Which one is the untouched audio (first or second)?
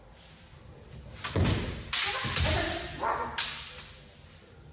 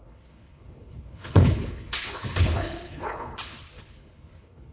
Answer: first